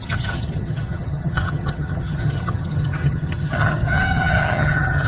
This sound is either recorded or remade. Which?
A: remade